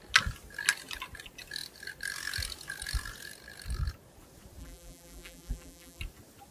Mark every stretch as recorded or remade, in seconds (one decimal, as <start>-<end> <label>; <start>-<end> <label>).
0.0-4.6 recorded; 4.6-6.0 remade; 6.0-6.5 recorded